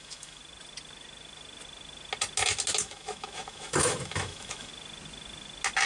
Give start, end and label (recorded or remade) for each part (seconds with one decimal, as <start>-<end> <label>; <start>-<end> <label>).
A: 0.0-0.4 remade; 0.4-2.8 recorded; 2.8-4.7 remade; 4.7-5.9 recorded